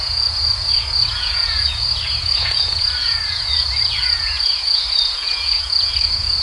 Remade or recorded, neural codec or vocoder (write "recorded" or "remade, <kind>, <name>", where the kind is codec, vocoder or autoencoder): remade, vocoder, Vocos